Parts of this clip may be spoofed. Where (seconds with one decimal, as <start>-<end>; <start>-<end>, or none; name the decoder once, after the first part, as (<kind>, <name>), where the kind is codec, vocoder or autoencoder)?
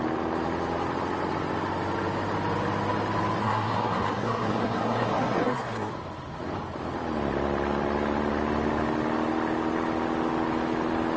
3.4-5.9 (codec, SNAC)